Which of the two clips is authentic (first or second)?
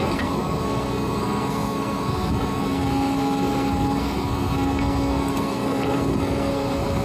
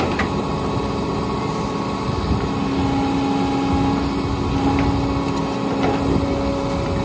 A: second